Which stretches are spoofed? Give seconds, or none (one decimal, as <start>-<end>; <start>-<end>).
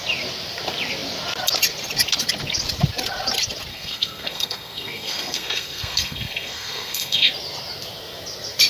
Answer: 3.7-7.3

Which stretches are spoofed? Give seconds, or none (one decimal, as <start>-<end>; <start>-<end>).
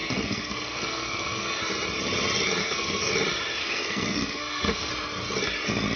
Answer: 0.0-1.6; 2.6-3.1; 3.6-4.9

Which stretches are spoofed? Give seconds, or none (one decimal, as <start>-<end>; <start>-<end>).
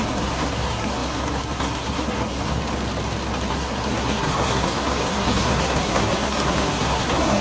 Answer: 0.0-2.6; 3.5-7.4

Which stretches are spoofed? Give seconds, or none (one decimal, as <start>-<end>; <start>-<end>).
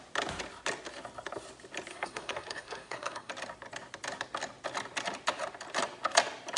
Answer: 1.9-3.3